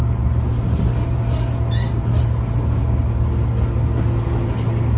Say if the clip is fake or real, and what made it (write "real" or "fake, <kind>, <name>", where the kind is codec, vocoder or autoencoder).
real